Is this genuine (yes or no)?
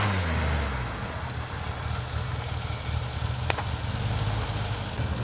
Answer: yes